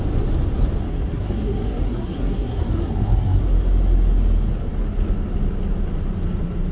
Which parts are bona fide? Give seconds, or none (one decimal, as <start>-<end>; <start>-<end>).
0.0-0.9; 3.4-6.7